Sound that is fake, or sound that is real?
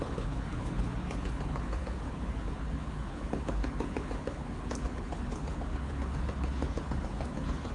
fake